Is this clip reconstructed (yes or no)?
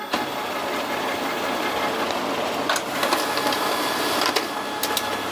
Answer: no